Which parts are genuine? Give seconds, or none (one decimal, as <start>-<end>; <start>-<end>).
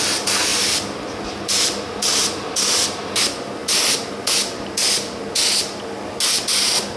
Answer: 0.0-7.0